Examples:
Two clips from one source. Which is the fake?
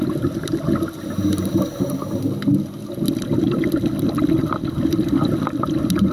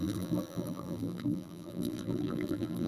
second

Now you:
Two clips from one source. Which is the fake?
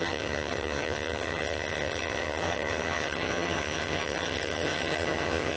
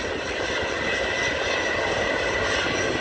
first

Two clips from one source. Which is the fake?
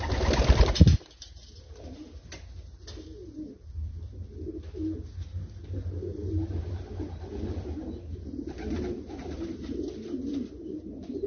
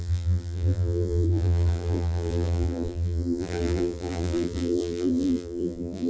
second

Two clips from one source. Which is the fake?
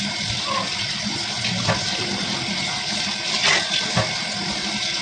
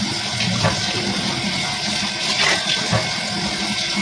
first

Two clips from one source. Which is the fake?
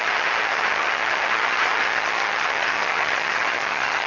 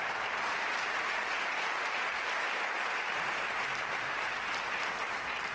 first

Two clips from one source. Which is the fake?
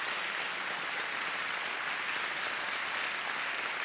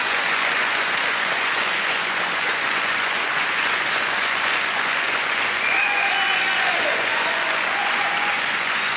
second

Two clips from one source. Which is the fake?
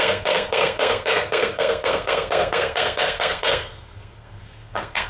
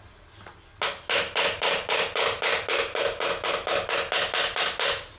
first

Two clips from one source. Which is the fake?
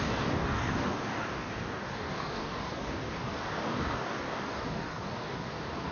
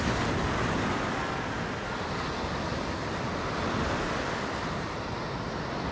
first